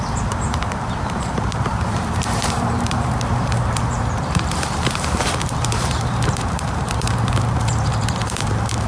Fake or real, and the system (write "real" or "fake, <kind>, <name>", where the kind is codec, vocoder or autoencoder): fake, vocoder, BigVGAN v2